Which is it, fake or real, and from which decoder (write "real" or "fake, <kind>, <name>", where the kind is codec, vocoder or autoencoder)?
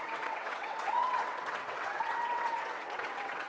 fake, vocoder, WaveNeXt